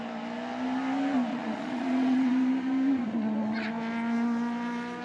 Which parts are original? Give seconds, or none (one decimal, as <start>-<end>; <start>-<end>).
0.0-1.3; 2.3-3.1; 3.7-5.0